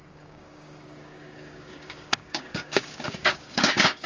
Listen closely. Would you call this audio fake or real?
fake